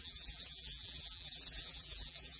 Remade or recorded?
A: remade